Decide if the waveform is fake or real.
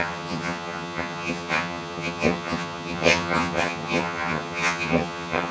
fake